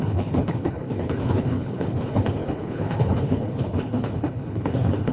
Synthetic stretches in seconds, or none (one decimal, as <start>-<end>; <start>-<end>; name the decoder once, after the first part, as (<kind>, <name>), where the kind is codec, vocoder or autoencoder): 0.0-5.1 (codec, HILCodec)